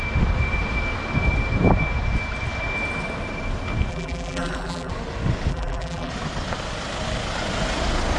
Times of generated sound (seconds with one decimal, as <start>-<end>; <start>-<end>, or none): 3.9-4.9; 5.5-6.1